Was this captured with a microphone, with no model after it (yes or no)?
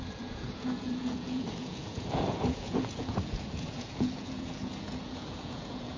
no